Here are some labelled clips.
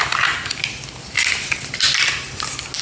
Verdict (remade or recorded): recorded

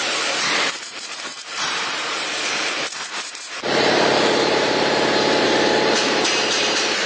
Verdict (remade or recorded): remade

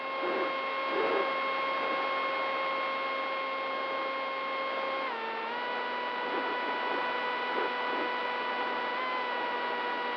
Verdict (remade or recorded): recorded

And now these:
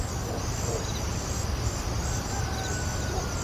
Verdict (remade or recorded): recorded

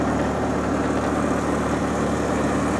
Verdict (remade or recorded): remade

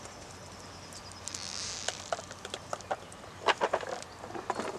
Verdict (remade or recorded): recorded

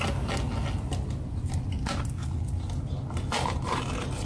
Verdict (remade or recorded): recorded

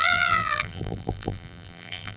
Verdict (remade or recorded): remade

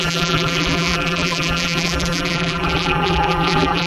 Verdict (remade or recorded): remade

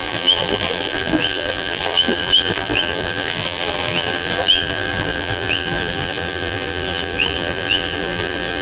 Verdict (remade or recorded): remade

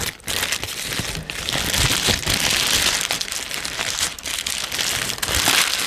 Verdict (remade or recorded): recorded